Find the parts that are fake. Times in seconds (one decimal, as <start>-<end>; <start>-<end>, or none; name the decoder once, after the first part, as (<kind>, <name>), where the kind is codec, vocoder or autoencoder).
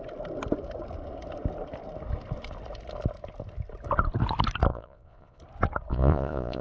4.7-5.4 (vocoder, Vocos); 5.9-6.6